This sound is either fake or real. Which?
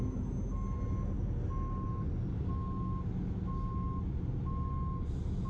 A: real